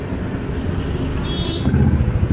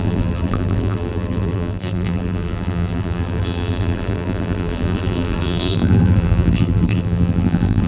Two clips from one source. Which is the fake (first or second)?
second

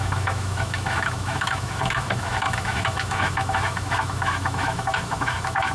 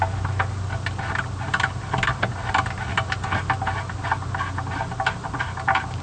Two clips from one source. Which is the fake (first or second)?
first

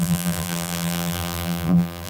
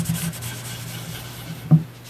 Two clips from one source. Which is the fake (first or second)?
first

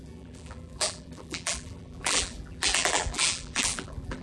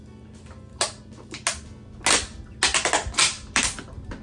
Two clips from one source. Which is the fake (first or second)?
first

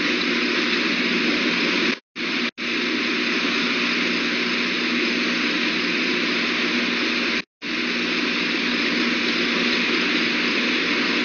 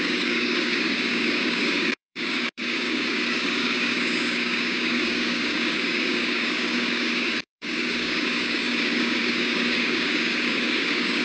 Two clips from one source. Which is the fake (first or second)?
second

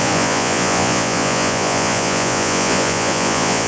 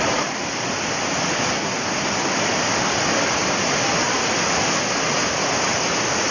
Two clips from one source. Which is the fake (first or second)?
first